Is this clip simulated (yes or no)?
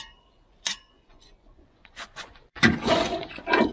yes